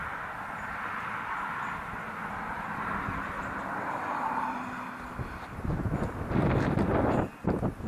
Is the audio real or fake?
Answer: real